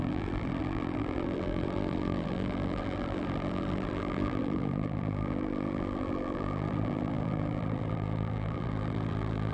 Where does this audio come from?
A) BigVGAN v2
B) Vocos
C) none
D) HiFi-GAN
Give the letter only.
A